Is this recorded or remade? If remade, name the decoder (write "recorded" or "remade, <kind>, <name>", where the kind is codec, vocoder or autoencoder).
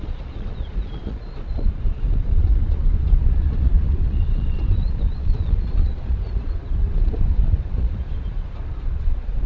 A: remade, vocoder, Vocos